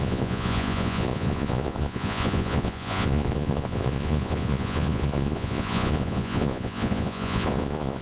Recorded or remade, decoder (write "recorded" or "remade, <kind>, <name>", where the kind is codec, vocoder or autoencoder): remade, vocoder, Vocos